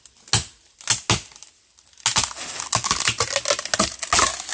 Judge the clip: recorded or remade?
recorded